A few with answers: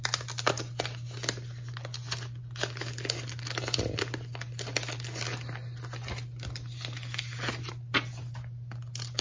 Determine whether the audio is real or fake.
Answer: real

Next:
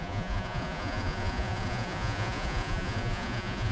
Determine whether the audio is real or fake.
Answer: fake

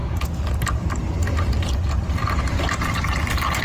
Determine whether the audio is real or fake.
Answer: real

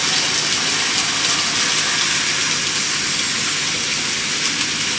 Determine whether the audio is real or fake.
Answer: real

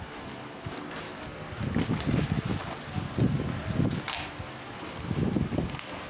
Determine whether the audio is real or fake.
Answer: real